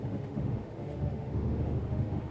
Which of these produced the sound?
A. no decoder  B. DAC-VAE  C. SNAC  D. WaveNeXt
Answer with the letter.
B